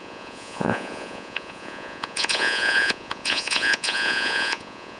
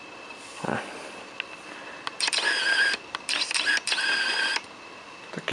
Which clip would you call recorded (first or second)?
second